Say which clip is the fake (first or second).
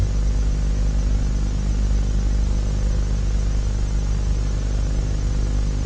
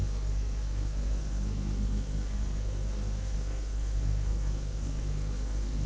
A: second